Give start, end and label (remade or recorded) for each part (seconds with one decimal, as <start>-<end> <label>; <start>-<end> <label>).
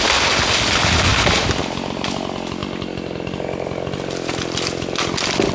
0.0-5.5 recorded